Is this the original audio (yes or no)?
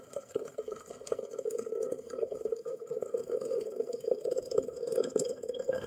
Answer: no